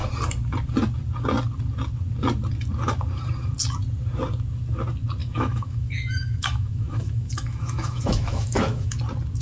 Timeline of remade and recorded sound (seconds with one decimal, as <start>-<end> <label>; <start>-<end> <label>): 0.0-5.2 recorded; 5.2-8.9 remade; 8.9-9.4 recorded